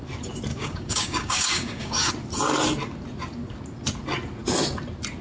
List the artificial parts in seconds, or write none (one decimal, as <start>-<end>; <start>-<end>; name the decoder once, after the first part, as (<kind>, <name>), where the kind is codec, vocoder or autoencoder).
0.5-2.1 (codec, DAC)